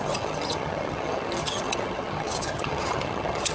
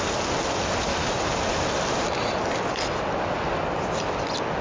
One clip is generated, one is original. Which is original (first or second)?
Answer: second